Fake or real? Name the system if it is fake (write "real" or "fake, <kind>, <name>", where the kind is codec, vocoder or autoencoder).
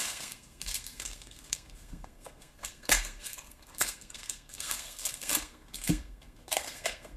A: fake, codec, SNAC